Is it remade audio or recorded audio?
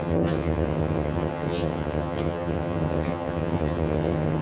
remade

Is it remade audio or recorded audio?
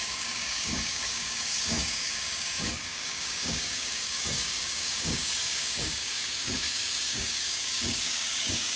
remade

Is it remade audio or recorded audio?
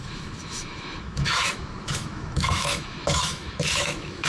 remade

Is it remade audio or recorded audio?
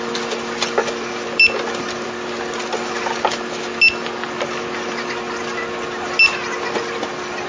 recorded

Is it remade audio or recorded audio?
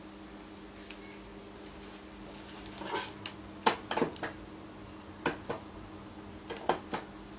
recorded